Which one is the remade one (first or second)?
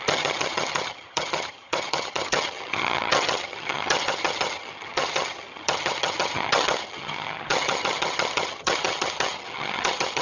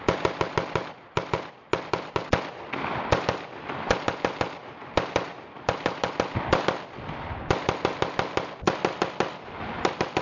first